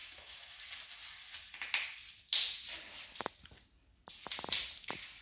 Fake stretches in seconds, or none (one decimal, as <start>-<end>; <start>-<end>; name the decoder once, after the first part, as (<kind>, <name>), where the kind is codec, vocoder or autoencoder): 0.0-0.6 (autoencoder, DAC-VAE)

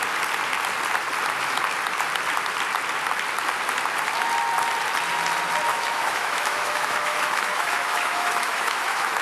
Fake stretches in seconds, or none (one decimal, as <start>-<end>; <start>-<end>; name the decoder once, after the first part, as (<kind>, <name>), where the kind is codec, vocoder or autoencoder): 5.7-9.2 (autoencoder, DAC-VAE)

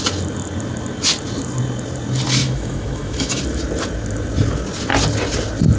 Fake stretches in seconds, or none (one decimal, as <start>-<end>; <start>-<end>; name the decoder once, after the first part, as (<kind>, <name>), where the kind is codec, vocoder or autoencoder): 2.4-3.4 (autoencoder, DAC-VAE)